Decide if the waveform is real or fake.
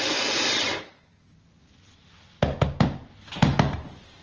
real